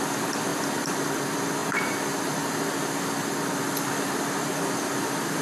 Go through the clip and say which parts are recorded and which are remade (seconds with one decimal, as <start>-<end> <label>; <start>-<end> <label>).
0.0-0.5 recorded; 0.5-1.1 remade; 1.1-5.4 recorded